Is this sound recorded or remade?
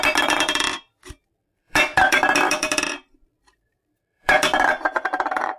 remade